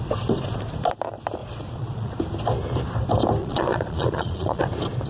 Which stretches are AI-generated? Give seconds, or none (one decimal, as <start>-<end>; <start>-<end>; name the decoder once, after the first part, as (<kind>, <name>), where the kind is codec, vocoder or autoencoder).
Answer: 1.4-2.2 (vocoder, Vocos); 3.4-4.6